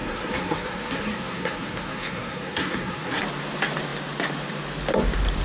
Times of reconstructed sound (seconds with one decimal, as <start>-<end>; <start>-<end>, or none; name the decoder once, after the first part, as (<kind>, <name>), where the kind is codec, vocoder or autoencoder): 0.0-3.2 (codec, SNAC)